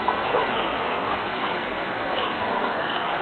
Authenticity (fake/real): fake